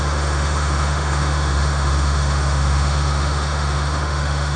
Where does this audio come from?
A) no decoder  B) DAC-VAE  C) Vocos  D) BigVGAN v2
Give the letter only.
B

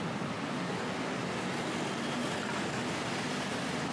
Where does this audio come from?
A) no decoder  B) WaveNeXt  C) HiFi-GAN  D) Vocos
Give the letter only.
A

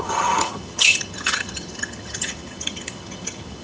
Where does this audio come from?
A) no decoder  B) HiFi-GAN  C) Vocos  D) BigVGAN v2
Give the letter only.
B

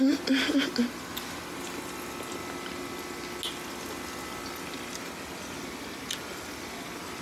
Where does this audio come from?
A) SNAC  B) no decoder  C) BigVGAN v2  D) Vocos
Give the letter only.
B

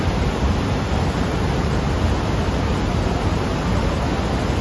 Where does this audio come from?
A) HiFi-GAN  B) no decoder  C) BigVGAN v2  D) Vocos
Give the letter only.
C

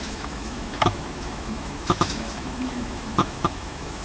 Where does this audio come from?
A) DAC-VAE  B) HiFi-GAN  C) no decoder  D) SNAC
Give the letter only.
A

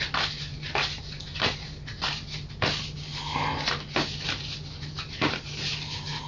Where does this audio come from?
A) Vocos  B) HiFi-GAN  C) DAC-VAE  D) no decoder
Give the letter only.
D